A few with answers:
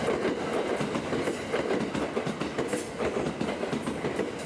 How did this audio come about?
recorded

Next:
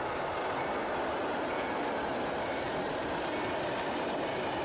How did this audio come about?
recorded